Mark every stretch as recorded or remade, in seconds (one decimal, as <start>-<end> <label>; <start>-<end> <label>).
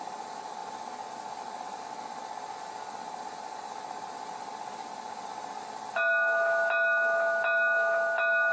0.0-8.5 recorded